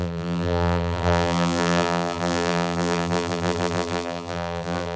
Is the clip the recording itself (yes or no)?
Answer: no